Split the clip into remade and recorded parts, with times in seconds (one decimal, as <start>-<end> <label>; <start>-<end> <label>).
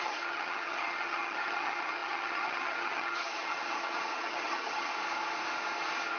0.0-4.9 remade; 4.9-6.2 recorded